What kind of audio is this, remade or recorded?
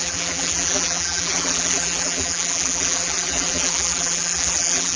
remade